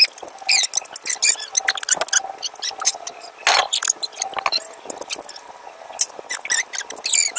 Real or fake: real